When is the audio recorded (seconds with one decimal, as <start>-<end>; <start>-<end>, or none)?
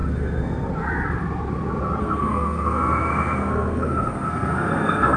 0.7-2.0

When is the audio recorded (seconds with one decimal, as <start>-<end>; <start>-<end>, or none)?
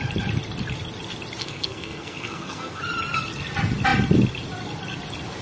0.0-1.4; 2.8-5.4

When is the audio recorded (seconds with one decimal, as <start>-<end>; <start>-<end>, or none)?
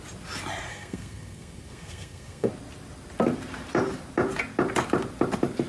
0.0-0.7; 2.5-5.7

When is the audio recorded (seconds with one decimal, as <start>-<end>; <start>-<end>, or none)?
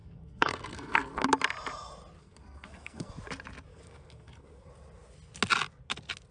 1.3-2.2; 3.1-3.7; 4.7-6.3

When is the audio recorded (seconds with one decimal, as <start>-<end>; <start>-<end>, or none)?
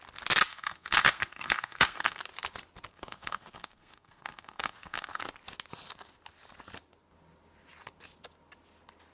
0.0-0.5; 2.2-2.9; 5.2-9.1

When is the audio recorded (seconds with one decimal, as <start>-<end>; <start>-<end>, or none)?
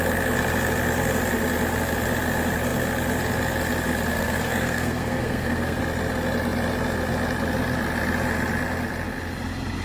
0.0-4.1; 5.8-9.8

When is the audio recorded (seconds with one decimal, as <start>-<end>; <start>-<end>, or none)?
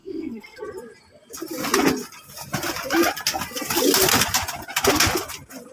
0.6-5.7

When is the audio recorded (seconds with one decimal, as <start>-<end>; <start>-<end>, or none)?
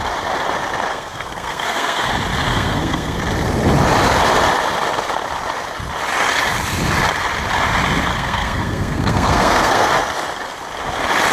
0.0-0.9; 2.1-2.5; 3.2-8.1; 9.9-11.3